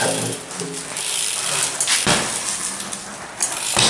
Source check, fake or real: real